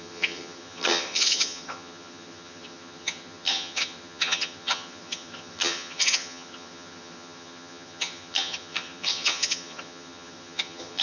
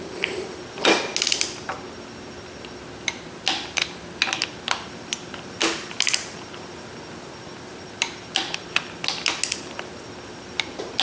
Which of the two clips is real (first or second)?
second